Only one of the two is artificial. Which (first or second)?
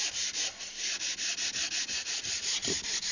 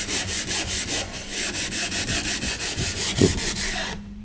second